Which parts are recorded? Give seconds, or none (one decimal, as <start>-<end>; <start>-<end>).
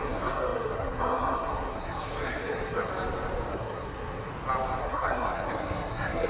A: 2.9-3.5; 4.3-4.8